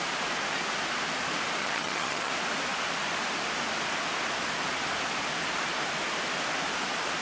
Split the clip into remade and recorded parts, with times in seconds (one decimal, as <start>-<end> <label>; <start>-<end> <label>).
0.0-1.6 recorded; 1.6-2.3 remade; 2.3-7.2 recorded

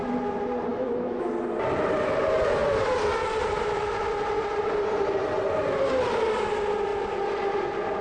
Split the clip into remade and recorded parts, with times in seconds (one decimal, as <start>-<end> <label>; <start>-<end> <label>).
0.0-0.7 recorded; 0.7-1.3 remade; 1.3-8.0 recorded

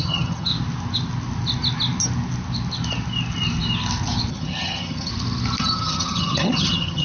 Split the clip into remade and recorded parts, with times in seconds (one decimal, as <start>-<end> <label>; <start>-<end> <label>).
0.0-0.5 remade; 0.5-4.3 recorded; 4.3-5.1 remade; 5.1-5.6 recorded; 5.6-7.0 remade

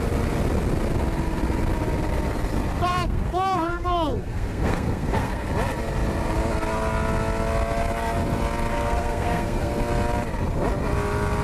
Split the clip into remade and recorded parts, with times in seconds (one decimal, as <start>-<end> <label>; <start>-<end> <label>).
0.0-2.9 recorded; 2.9-5.5 remade; 5.5-8.7 recorded; 8.7-9.7 remade; 9.7-11.4 recorded

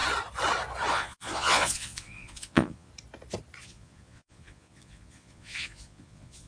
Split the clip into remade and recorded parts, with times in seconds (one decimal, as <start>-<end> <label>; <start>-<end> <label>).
0.0-0.9 recorded; 0.9-2.9 remade; 2.9-3.6 recorded; 3.6-6.5 remade